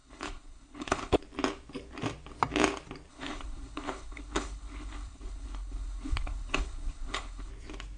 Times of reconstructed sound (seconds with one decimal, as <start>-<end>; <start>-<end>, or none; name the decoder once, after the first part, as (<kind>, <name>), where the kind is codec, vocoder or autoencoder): 0.0-1.2 (codec, HILCodec); 3.1-7.5